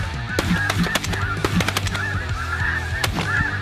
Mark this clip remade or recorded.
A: recorded